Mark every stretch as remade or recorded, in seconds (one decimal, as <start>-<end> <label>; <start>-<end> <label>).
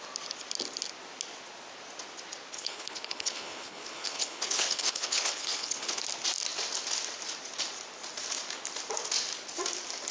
0.0-2.5 recorded; 2.5-6.0 remade; 6.0-10.1 recorded